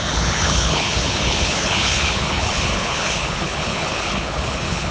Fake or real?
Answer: fake